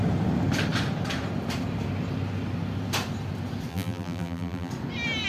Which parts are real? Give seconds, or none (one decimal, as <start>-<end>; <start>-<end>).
0.0-3.7; 4.7-5.3